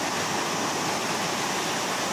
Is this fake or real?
real